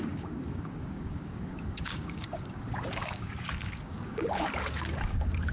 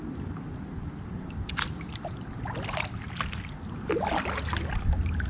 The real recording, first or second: second